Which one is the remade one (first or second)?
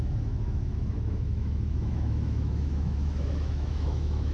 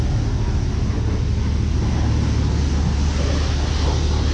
first